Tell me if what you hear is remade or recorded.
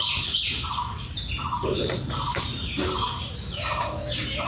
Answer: remade